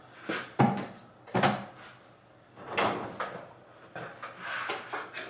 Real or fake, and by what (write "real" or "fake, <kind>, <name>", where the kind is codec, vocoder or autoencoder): real